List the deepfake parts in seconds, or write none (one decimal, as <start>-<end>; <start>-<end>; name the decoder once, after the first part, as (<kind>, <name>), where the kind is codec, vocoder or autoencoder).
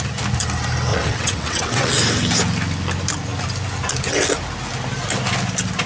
0.9-2.0 (vocoder, WaveNeXt)